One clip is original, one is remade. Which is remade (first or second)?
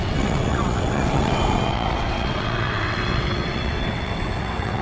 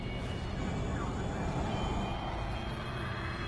first